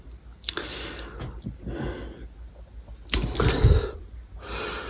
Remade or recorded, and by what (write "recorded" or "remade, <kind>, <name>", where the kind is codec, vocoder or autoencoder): recorded